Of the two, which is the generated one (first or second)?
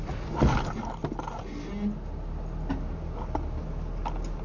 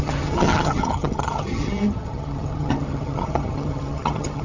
second